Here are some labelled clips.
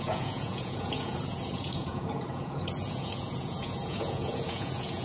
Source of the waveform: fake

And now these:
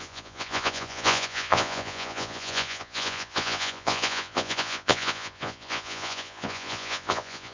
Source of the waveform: fake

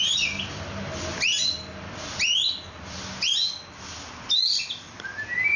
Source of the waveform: real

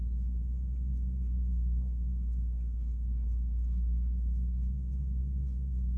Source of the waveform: real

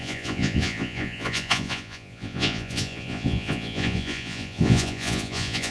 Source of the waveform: fake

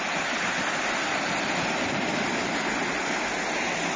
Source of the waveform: real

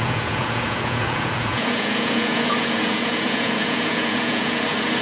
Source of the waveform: fake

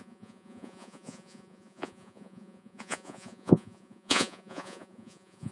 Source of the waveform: fake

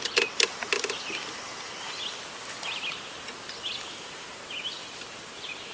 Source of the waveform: real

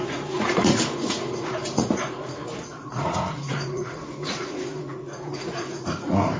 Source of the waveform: fake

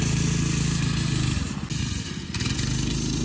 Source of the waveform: real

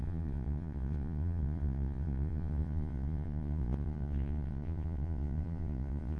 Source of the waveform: fake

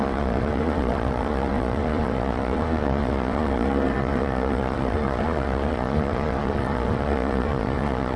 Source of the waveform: fake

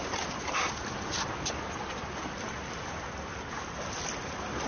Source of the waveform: real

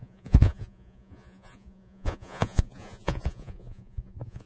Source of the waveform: fake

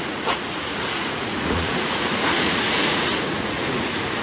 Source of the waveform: fake